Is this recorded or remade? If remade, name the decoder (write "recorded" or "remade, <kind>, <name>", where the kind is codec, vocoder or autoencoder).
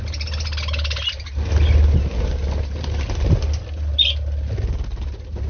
recorded